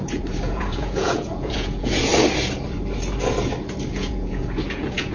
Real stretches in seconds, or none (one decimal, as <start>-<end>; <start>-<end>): 2.1-3.9